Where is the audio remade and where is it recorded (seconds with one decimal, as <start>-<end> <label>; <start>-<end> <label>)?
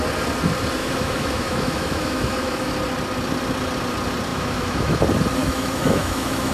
0.0-0.8 recorded; 0.8-2.7 remade; 2.7-4.3 recorded; 4.3-5.0 remade; 5.0-5.4 recorded; 5.4-6.5 remade